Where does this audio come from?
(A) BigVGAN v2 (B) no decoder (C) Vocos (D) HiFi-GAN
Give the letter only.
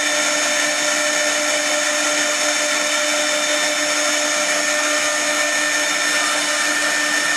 B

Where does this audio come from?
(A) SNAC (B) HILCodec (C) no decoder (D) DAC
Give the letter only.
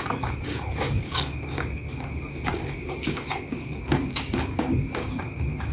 D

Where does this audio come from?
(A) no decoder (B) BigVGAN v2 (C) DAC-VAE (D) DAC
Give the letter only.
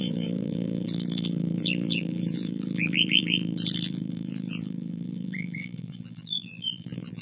B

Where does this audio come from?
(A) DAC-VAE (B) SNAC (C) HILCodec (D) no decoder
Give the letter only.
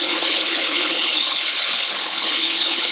C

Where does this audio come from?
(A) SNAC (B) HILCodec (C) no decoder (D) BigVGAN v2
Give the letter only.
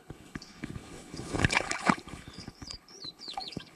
B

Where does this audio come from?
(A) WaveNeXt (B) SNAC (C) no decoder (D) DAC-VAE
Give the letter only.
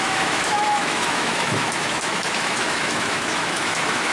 D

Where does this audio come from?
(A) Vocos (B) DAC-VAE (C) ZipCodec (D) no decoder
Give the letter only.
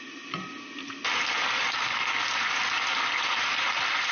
D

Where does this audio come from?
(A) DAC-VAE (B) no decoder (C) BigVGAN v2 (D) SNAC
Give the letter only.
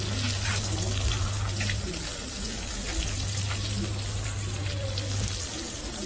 B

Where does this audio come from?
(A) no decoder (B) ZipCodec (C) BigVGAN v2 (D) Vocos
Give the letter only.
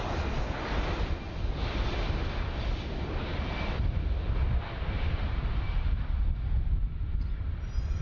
A